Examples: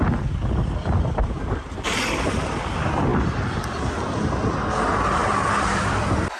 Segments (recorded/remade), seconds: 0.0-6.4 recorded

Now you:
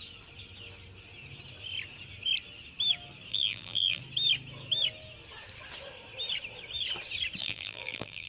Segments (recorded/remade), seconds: 0.0-3.3 recorded; 3.3-4.0 remade; 4.0-7.4 recorded; 7.4-8.3 remade

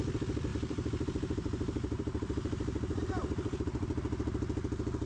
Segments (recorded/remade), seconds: 0.0-0.5 recorded; 0.5-3.0 remade; 3.0-5.1 recorded

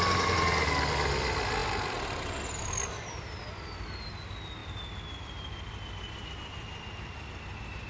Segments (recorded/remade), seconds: 0.0-1.6 recorded; 1.6-4.0 remade; 4.0-7.9 recorded